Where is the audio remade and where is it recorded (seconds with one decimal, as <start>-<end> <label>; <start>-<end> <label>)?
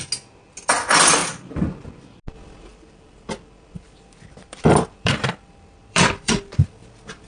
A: 0.0-1.2 recorded; 1.2-2.2 remade; 2.2-2.7 recorded; 2.7-7.3 remade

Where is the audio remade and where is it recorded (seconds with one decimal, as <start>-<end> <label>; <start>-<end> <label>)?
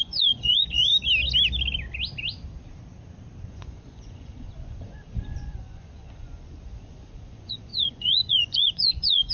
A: 0.0-0.9 remade; 0.9-3.5 recorded; 3.5-9.3 remade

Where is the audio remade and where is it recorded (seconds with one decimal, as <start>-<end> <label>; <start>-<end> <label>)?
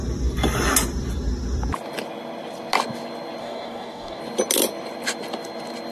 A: 0.0-3.4 recorded; 3.4-4.2 remade; 4.2-5.9 recorded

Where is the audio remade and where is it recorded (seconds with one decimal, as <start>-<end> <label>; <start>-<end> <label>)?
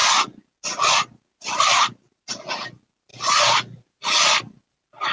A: 0.0-5.1 recorded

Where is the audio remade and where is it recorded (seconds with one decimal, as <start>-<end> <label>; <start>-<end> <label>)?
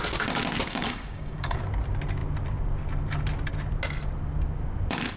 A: 0.0-0.6 recorded; 0.6-1.6 remade; 1.6-5.2 recorded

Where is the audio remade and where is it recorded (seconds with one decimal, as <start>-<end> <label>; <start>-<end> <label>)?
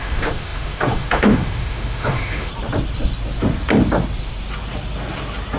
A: 0.0-2.5 remade; 2.5-5.6 recorded